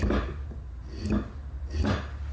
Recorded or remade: recorded